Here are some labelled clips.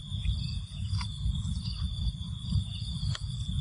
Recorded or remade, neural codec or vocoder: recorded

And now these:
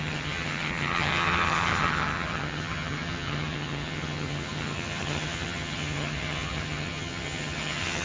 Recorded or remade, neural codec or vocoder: remade, vocoder, HiFi-GAN